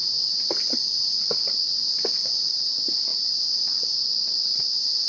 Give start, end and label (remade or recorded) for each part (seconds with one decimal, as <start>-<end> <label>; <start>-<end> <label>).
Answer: 0.0-5.1 recorded

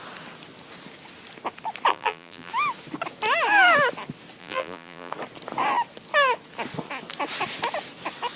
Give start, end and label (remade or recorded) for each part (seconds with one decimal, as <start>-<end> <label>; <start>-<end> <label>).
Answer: 0.0-1.9 recorded; 1.9-2.5 remade; 2.5-4.4 recorded; 4.4-5.1 remade; 5.1-8.4 recorded

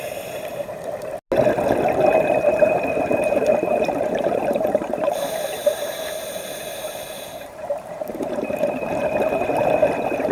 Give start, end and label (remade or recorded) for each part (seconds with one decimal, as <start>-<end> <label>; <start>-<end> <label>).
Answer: 0.0-0.5 remade; 0.5-2.1 recorded; 2.1-10.3 remade

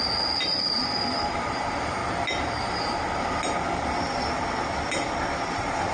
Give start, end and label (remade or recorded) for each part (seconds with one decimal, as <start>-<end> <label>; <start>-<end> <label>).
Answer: 0.0-2.0 remade; 2.0-5.5 recorded; 5.5-5.9 remade